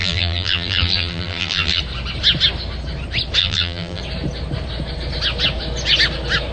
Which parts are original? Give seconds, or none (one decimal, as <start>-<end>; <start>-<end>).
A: 1.8-3.4; 4.0-6.5